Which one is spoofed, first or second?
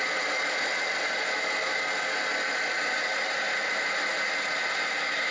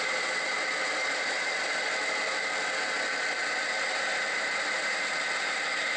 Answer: second